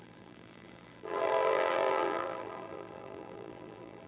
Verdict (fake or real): fake